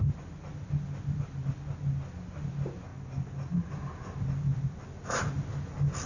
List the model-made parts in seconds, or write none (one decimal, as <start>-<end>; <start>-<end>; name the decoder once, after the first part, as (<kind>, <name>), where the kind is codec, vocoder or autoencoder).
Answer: 4.5-5.4 (vocoder, BigVGAN v2)